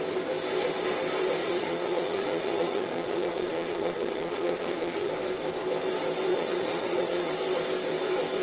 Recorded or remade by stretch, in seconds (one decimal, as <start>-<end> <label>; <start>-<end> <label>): 0.0-1.4 recorded; 1.4-5.1 remade; 5.1-6.3 recorded; 6.3-7.3 remade; 7.3-8.4 recorded